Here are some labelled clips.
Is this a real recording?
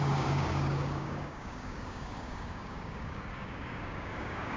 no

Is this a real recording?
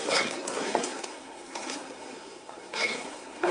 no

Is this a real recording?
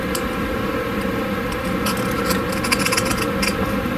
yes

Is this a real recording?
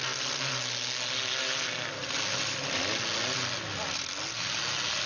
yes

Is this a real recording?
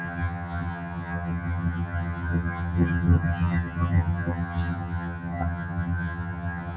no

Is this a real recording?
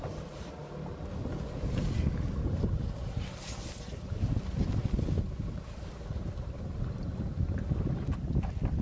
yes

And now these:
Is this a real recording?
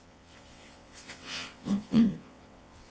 no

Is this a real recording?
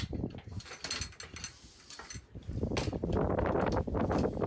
yes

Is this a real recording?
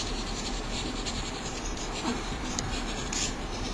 no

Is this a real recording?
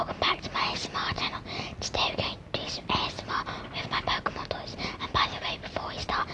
yes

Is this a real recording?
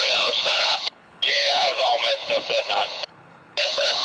no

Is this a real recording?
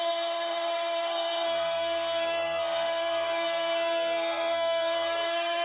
no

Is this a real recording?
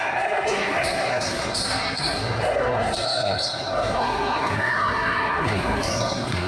no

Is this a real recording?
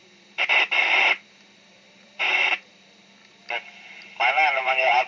no